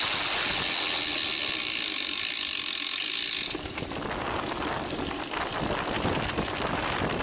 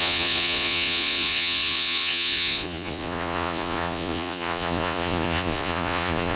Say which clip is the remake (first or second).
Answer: second